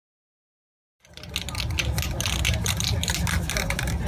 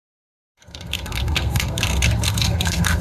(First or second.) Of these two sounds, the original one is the first